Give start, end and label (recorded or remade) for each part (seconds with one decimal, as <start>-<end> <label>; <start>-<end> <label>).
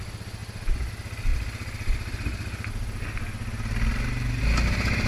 0.0-5.1 recorded